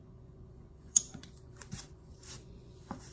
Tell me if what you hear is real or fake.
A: fake